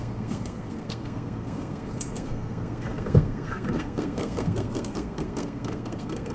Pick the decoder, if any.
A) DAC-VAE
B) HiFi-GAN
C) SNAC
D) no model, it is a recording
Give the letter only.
C